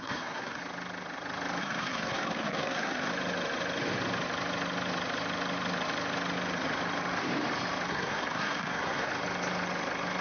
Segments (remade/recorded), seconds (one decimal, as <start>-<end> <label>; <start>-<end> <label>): 0.0-0.6 remade; 0.6-1.6 recorded; 1.6-3.1 remade; 3.1-7.9 recorded; 7.9-9.1 remade; 9.1-10.2 recorded